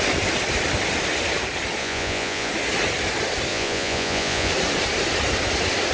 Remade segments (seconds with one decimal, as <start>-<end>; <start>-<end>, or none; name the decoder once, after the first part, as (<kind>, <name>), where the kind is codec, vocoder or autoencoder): 1.8-2.5 (vocoder, Vocos); 3.5-4.5